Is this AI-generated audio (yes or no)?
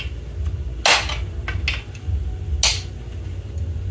no